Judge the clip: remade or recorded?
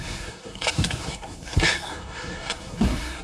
remade